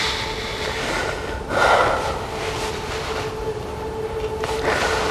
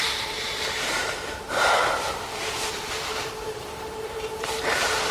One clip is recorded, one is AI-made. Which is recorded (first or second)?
first